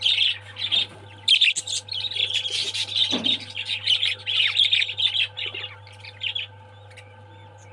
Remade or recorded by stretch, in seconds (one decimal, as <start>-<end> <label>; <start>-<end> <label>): 0.0-3.0 recorded; 3.0-4.1 remade; 4.1-7.7 recorded